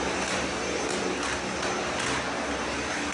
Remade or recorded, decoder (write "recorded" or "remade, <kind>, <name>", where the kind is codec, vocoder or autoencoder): recorded